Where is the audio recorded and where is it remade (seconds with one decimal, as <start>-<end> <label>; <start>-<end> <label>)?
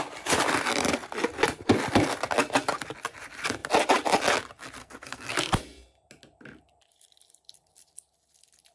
0.0-4.8 recorded; 4.8-5.3 remade; 5.3-8.7 recorded